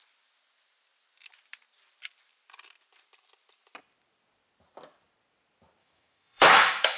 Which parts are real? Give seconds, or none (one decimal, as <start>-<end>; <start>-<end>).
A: 0.0-5.8